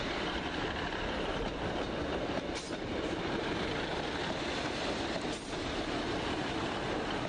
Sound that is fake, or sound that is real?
real